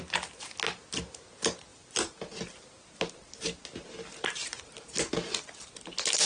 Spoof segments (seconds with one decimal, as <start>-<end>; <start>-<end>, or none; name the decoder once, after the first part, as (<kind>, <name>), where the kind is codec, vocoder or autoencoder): 1.7-2.4 (vocoder, BigVGAN v2)